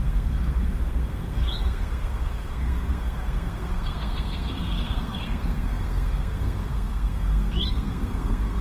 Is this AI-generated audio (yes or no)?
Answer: yes